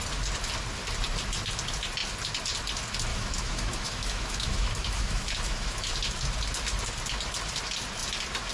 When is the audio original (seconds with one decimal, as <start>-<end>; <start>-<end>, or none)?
0.0-3.1; 5.9-8.5